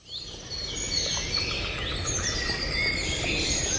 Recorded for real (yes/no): yes